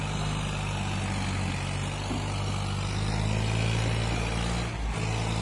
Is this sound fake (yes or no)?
no